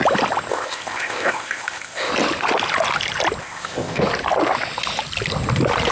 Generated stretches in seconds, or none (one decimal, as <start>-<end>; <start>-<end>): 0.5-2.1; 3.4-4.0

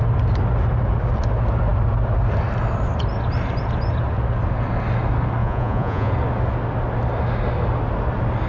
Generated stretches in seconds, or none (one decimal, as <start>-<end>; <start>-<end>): 5.4-6.1

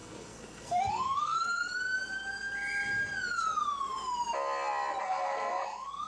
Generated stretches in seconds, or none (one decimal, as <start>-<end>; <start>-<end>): 0.0-1.7; 5.0-6.1

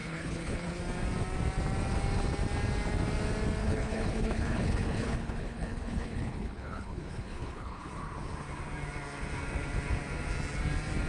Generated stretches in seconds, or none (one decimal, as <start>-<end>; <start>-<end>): 0.0-0.8; 3.6-7.9

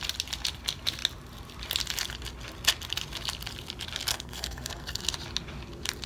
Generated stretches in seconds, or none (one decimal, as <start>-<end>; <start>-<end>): 4.1-5.1